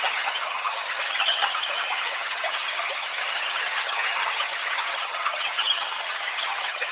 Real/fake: fake